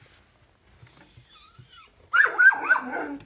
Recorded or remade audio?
recorded